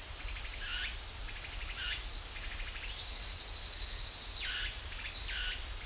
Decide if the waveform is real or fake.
real